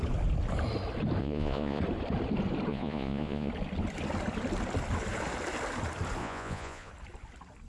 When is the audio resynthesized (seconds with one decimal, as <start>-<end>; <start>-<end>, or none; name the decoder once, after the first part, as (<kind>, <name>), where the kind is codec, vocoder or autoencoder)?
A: 1.2-1.8 (vocoder, Vocos); 2.7-3.5; 6.2-6.9